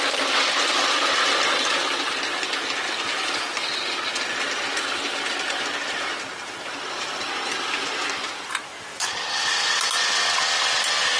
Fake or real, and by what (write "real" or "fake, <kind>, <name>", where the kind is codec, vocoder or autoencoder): real